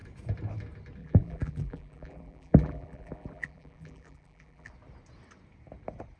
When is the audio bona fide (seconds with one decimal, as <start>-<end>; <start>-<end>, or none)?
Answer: 0.0-1.0; 4.7-6.2